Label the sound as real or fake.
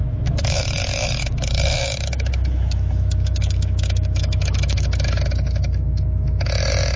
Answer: fake